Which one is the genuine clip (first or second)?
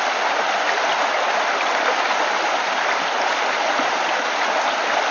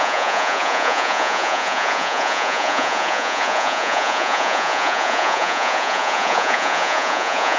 first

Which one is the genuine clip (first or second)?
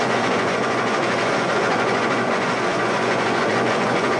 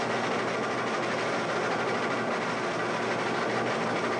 second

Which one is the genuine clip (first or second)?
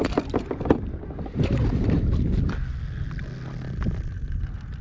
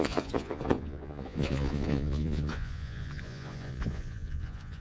first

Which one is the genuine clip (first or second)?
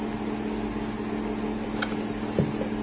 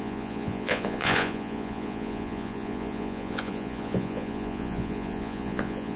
first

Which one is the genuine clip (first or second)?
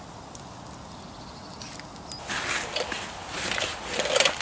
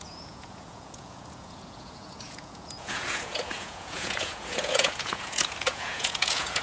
first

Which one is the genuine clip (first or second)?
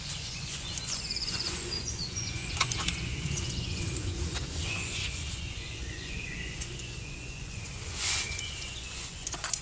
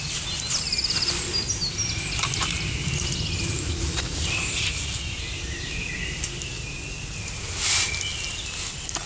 second